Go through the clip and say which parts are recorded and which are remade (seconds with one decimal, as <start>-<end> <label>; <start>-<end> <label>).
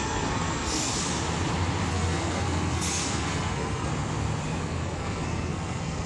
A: 0.0-0.9 remade; 0.9-1.9 recorded; 1.9-3.9 remade; 3.9-4.6 recorded; 4.6-6.1 remade